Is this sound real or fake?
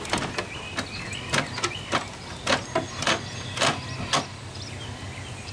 real